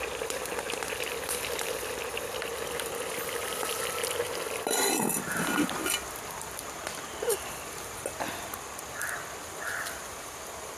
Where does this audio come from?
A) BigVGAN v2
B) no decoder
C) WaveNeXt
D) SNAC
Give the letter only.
A